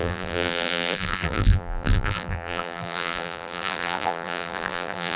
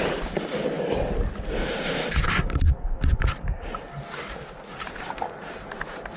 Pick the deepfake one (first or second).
first